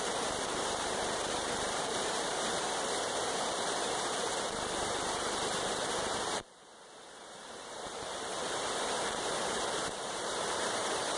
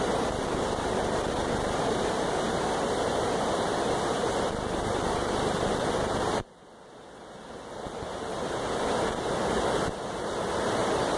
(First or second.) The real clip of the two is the second